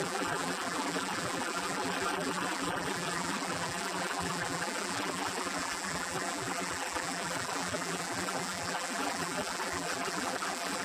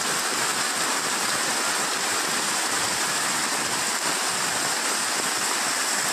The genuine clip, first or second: second